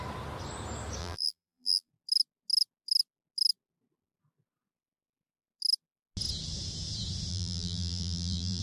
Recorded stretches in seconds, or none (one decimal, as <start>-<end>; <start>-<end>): 0.0-1.0; 1.9-7.3